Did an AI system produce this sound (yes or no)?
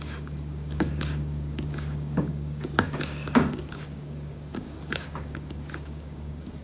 yes